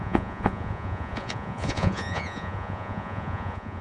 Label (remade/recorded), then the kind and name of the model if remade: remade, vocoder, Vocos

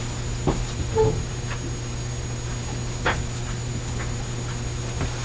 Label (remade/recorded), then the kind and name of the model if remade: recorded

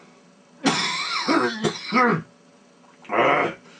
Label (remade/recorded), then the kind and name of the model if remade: recorded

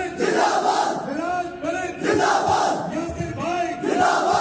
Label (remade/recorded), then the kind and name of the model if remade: recorded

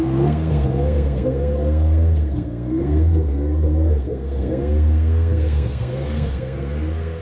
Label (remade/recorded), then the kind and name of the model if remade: remade, codec, SNAC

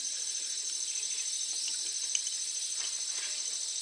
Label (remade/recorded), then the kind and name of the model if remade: recorded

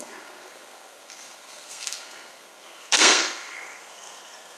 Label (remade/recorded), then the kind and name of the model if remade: remade, codec, SNAC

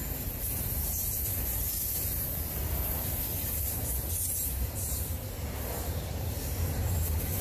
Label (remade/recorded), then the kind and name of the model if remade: remade, vocoder, BigVGAN v2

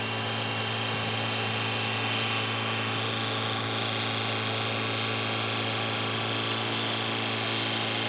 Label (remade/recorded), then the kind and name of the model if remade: recorded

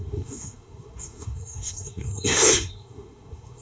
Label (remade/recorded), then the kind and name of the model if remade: remade, codec, SNAC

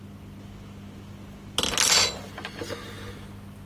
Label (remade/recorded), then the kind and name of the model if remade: recorded